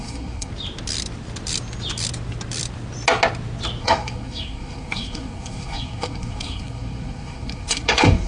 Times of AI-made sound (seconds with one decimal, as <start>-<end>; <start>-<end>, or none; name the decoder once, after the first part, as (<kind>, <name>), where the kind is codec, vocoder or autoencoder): 0.0-0.5 (codec, SNAC); 3.8-8.3